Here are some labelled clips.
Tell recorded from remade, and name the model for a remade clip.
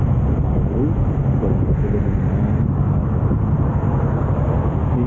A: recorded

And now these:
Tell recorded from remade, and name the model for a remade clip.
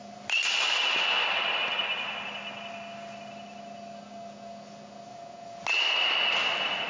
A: recorded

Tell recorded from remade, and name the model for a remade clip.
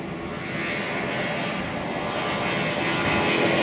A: recorded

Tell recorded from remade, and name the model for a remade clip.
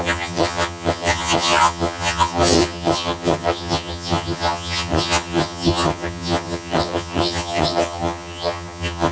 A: remade, vocoder, HiFi-GAN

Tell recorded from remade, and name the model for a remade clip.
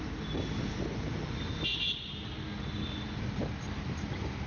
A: recorded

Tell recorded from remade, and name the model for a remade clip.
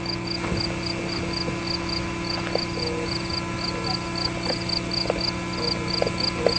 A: recorded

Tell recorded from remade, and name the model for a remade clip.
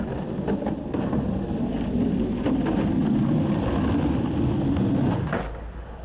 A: recorded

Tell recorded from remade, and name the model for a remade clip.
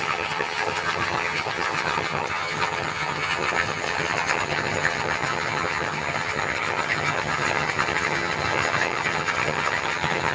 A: remade, vocoder, HiFi-GAN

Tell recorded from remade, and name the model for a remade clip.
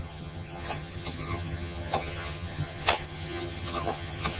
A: remade, vocoder, HiFi-GAN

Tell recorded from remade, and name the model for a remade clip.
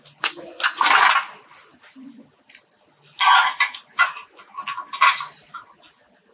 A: recorded